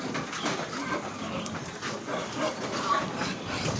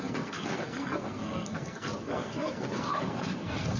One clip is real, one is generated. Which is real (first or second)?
first